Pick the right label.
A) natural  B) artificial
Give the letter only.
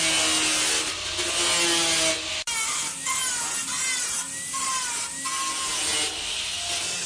A